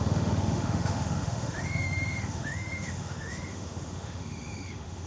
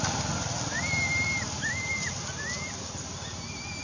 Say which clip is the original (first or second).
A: second